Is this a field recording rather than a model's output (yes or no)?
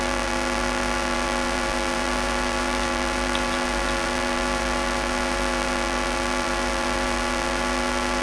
no